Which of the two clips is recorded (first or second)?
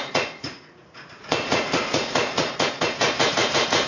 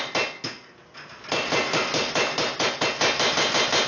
second